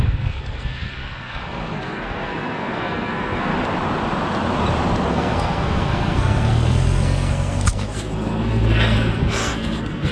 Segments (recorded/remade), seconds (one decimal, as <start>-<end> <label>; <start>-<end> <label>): 0.0-3.5 remade; 3.5-5.1 recorded; 5.1-10.1 remade